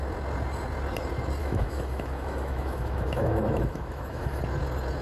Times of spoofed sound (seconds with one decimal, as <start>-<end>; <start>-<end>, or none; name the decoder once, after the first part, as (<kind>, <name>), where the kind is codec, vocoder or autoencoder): 1.4-4.4 (autoencoder, DAC-VAE)